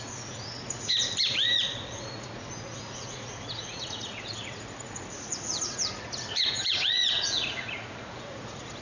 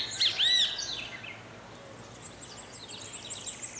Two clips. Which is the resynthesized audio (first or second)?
first